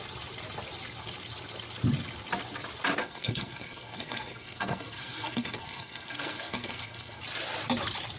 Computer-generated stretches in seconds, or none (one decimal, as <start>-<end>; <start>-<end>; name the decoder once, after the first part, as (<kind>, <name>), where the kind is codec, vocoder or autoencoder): 3.0-7.2 (codec, SNAC)